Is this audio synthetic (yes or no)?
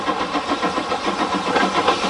no